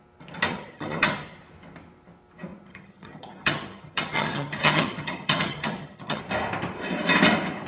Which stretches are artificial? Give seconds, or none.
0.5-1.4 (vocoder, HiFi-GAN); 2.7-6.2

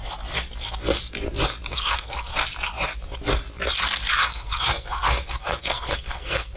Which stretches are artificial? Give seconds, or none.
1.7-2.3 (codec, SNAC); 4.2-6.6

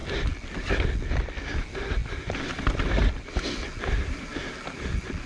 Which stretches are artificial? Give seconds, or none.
none

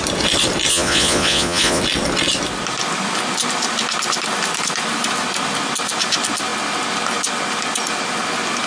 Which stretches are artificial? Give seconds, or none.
0.7-1.8 (vocoder, Vocos)